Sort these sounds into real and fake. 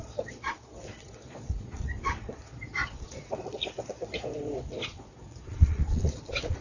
fake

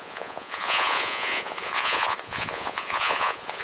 fake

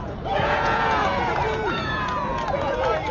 fake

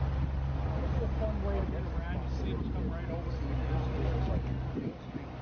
real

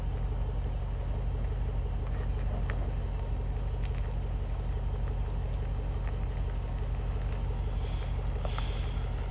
real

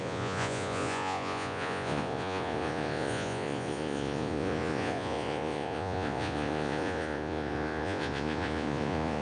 fake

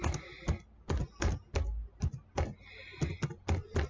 real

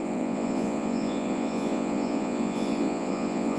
fake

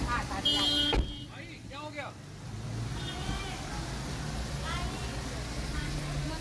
real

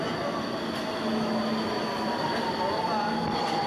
real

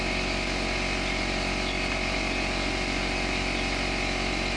real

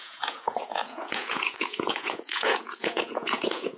fake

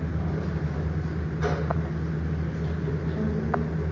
real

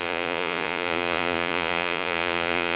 fake